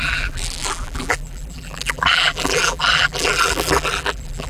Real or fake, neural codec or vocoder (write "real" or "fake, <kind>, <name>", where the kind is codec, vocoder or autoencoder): fake, vocoder, BigVGAN v2